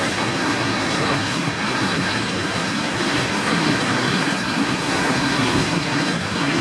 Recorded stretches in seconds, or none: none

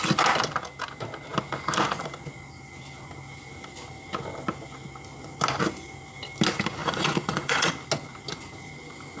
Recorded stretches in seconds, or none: 0.0-6.8; 7.7-9.2